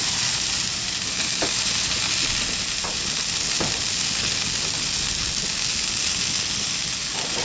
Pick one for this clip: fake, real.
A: real